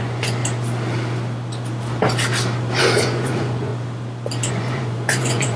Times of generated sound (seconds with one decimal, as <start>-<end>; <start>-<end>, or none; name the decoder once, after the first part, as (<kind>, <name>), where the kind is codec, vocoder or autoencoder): 0.0-0.4 (vocoder, Vocos); 2.8-3.7; 4.5-5.6